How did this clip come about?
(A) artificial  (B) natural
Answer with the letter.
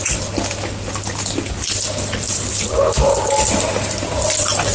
B